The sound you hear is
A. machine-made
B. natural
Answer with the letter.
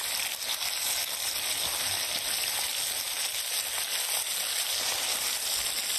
B